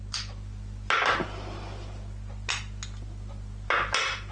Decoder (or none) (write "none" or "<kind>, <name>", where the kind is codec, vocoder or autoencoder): none